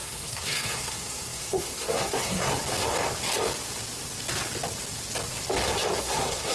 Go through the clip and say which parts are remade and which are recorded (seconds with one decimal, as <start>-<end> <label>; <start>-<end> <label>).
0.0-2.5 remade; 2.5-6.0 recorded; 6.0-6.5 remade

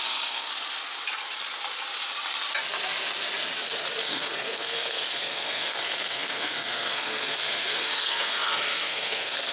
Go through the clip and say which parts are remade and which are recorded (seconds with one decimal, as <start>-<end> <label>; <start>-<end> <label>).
0.0-0.5 remade; 0.5-4.0 recorded; 4.0-9.5 remade

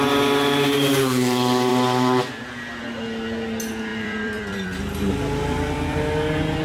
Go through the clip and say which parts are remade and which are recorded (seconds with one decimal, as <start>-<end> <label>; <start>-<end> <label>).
0.0-3.9 recorded; 3.9-4.8 remade; 4.8-6.6 recorded

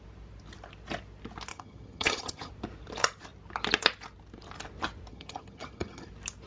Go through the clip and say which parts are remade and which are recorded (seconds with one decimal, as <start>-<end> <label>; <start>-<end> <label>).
0.0-1.5 recorded; 1.5-2.5 remade; 2.5-5.1 recorded; 5.1-6.1 remade; 6.1-6.5 recorded

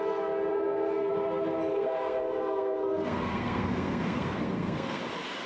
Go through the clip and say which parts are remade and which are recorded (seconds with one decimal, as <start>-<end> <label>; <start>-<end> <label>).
0.0-0.5 recorded; 0.5-1.1 remade; 1.1-1.7 recorded; 1.7-5.0 remade; 5.0-5.5 recorded